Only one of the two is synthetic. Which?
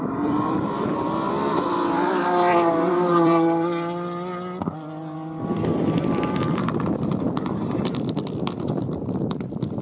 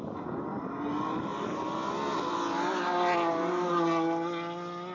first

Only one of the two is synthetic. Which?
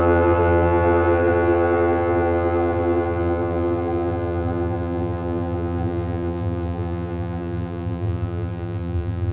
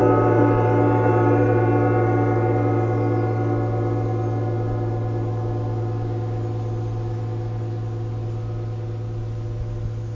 first